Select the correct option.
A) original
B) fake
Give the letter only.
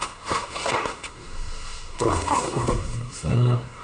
B